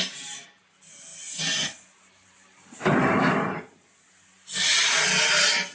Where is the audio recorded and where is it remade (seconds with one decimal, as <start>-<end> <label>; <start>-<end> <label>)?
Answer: 0.0-5.7 recorded